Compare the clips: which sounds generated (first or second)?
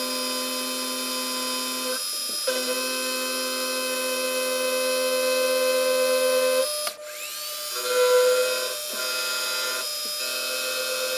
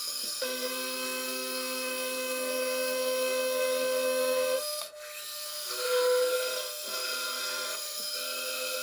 second